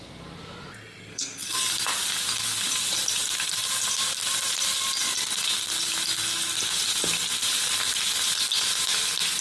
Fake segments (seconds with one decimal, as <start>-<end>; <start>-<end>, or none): 1.1-1.6